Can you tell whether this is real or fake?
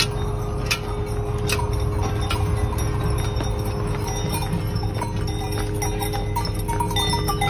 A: real